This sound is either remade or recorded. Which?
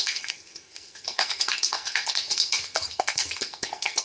remade